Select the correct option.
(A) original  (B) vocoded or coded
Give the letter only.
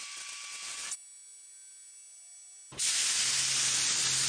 A